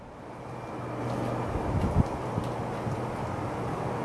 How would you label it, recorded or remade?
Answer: recorded